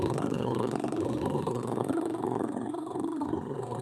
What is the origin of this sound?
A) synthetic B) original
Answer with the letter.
A